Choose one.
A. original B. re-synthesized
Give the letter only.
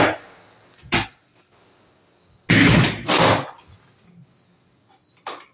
A